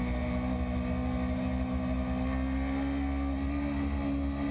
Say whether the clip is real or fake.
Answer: real